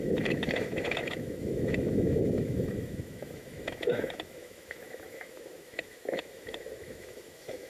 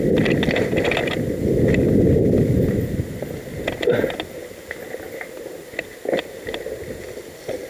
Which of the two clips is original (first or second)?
second